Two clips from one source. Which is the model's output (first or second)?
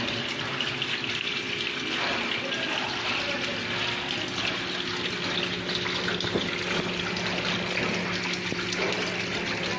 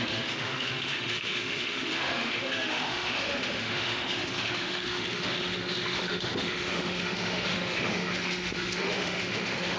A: second